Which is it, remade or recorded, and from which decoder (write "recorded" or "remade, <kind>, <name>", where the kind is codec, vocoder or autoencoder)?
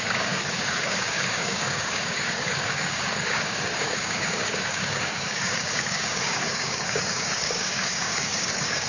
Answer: remade, codec, DAC